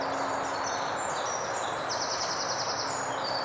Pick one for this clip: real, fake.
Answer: real